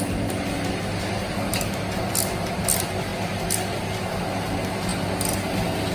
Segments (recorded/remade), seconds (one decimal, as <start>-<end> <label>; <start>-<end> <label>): 0.0-5.9 recorded